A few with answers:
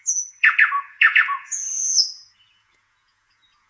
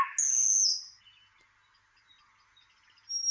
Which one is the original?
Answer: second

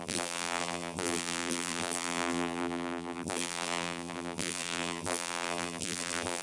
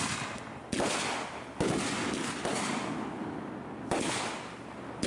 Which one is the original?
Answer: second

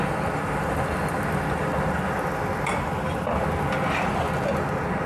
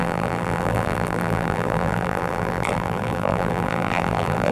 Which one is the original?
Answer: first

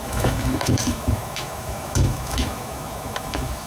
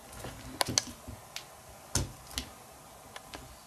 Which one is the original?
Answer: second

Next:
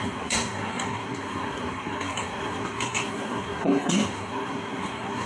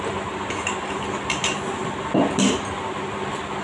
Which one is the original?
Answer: second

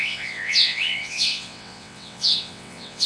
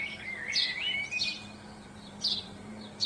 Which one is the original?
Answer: second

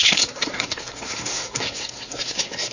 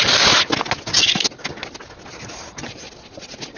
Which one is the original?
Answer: second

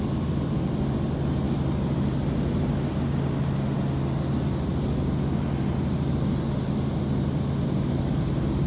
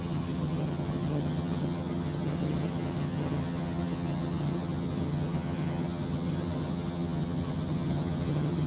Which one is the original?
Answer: first